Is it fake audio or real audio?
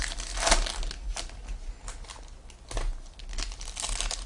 real